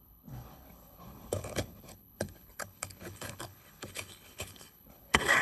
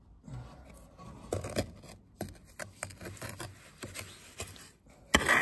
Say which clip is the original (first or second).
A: second